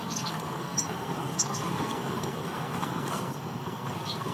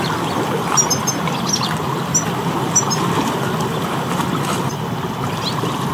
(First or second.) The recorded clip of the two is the second